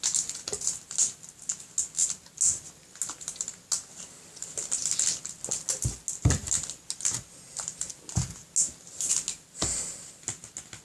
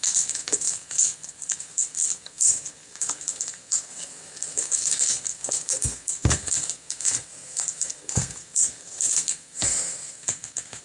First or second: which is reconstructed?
second